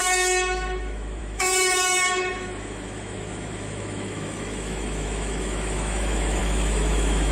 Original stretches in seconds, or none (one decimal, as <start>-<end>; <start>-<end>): none